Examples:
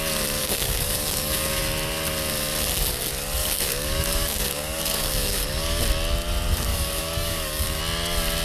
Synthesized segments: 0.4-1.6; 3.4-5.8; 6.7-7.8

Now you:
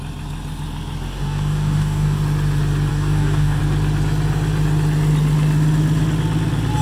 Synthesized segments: 1.1-2.2; 2.9-3.6

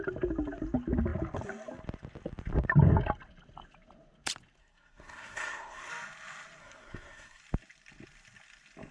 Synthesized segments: 4.6-5.9; 6.6-7.4

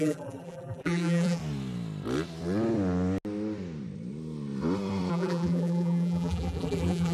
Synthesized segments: 0.0-1.4; 5.1-7.1

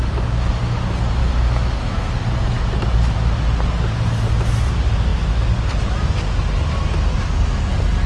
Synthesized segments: 1.2-2.1

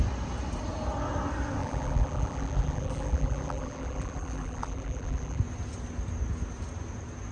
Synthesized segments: 1.6-5.4